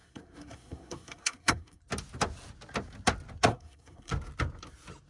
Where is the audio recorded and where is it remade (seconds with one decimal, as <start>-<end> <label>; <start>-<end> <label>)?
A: 0.0-1.8 remade; 1.8-3.5 recorded; 3.5-4.1 remade; 4.1-5.1 recorded